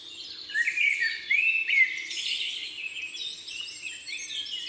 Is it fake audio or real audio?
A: real